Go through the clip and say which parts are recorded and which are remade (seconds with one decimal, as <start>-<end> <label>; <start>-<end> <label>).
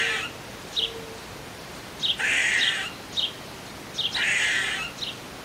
0.0-5.4 recorded